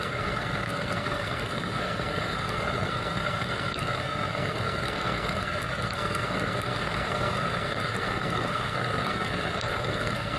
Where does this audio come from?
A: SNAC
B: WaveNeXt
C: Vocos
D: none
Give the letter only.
A